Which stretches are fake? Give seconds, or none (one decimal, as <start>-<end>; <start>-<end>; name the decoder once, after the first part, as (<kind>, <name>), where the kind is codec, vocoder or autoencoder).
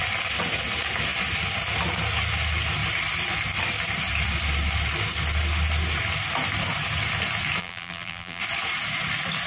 7.6-8.4 (vocoder, BigVGAN v2)